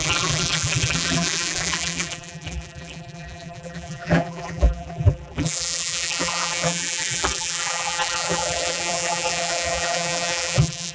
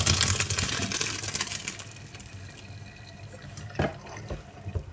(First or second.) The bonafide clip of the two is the second